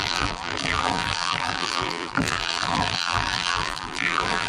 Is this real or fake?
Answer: fake